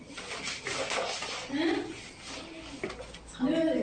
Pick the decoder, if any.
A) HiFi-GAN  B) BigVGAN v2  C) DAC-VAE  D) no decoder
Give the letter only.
D